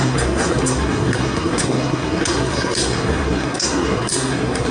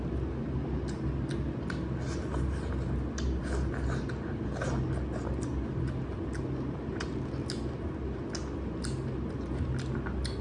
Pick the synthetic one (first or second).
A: first